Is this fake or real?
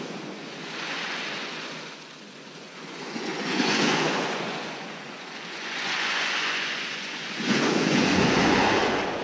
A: fake